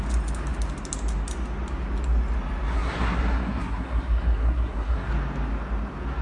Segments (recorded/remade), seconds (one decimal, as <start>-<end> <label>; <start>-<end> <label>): 0.0-2.7 recorded; 2.7-5.1 remade; 5.1-6.2 recorded